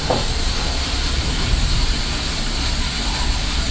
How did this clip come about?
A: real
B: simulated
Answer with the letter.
A